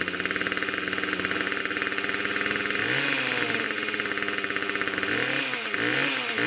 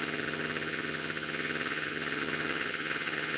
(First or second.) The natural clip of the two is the first